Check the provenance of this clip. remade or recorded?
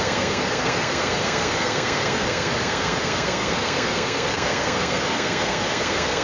remade